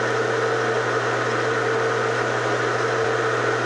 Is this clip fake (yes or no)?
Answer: no